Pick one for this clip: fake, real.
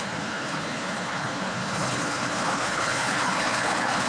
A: fake